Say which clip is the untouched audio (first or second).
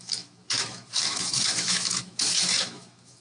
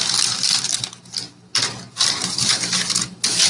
second